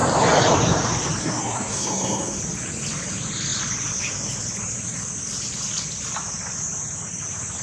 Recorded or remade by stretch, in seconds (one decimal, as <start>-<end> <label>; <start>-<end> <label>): 0.0-1.2 recorded; 1.2-2.4 remade; 2.4-7.6 recorded